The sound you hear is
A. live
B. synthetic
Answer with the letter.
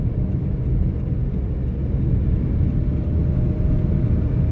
A